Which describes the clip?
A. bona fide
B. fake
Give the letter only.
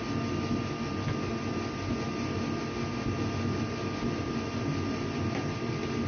A